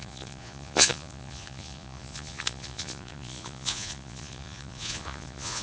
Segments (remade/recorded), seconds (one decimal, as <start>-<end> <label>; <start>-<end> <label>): 0.0-5.6 remade